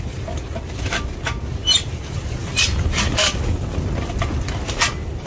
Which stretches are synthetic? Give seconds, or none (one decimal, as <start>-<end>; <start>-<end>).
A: none